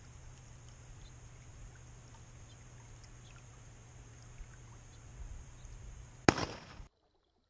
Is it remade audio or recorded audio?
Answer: recorded